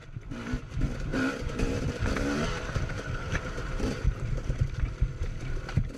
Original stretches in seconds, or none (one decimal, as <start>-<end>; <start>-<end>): 0.0-1.1; 4.6-6.0